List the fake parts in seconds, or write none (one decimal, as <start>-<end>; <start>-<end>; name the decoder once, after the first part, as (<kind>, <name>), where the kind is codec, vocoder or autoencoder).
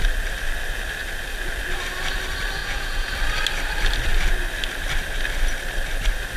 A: 2.6-3.1 (vocoder, Vocos)